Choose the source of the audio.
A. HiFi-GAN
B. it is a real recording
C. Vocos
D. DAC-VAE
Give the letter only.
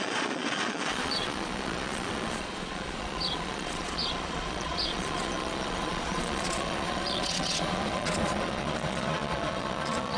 C